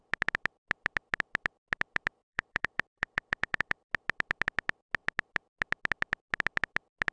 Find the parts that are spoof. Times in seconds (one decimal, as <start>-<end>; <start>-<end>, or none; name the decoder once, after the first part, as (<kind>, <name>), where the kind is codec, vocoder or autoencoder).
2.2-3.9 (vocoder, BigVGAN v2)